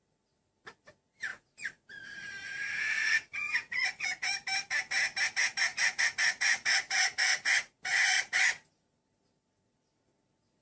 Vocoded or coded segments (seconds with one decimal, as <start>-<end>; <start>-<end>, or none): 1.3-4.3; 5.7-8.4